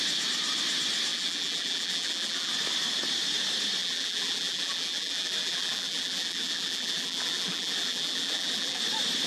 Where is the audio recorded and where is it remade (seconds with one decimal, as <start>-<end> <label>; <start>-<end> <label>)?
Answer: 0.0-1.1 recorded; 1.1-2.5 remade; 2.5-3.8 recorded; 3.8-8.8 remade; 8.8-9.3 recorded